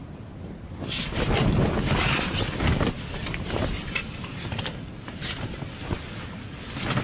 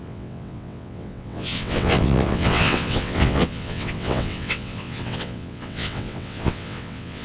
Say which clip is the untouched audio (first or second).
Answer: first